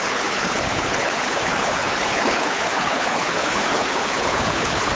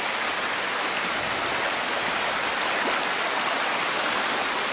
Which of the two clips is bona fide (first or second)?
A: second